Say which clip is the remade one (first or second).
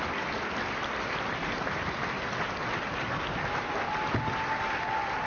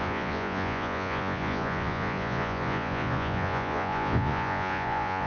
second